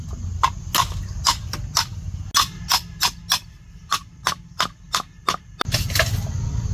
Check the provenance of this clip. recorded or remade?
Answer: recorded